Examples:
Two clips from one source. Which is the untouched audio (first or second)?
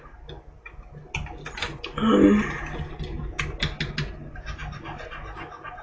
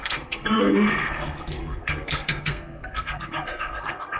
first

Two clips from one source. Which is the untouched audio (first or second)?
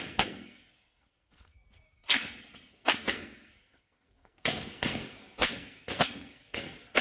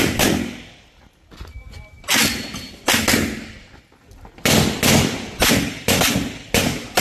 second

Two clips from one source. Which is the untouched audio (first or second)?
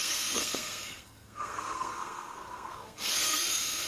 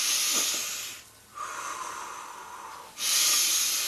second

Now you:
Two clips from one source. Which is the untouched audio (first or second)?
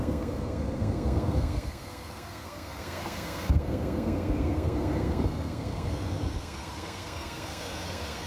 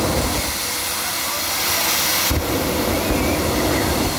second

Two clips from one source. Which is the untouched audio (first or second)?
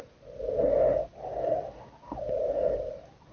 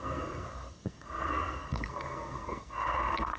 first